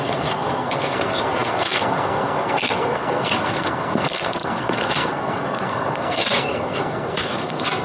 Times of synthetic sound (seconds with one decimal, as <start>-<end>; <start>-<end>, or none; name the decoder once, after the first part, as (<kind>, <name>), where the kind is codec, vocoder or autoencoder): 0.0-7.8 (codec, SNAC)

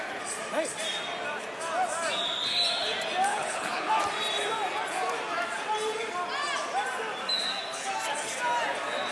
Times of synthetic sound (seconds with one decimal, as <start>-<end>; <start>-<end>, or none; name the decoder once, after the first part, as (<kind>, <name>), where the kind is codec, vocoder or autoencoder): 3.3-3.9 (codec, HILCodec)